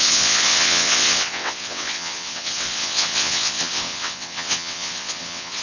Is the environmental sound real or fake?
fake